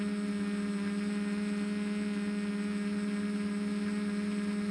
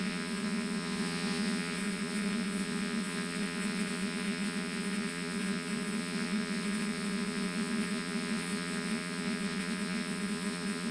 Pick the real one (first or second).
first